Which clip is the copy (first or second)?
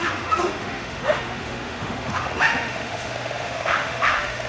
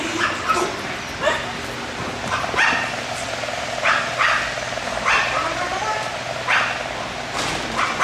first